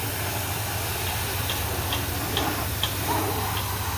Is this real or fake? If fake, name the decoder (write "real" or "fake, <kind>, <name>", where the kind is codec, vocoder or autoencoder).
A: real